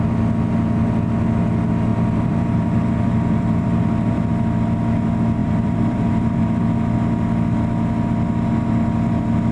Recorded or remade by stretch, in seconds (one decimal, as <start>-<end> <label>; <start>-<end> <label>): 0.0-1.9 recorded; 1.9-4.3 remade; 4.3-5.4 recorded; 5.4-6.6 remade; 6.6-9.5 recorded